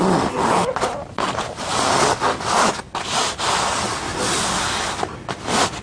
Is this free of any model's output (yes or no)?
yes